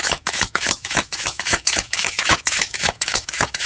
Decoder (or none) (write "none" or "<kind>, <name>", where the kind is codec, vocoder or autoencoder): autoencoder, DAC-VAE